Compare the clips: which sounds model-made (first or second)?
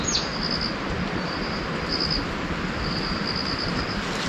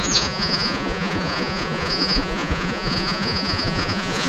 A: second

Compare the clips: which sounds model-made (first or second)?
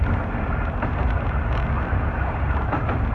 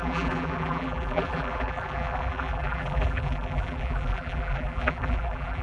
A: second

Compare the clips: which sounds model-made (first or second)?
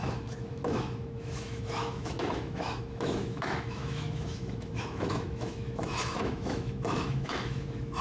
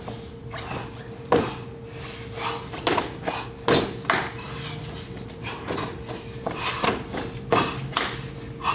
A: first